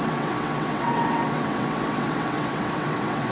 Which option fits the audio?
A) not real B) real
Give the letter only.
A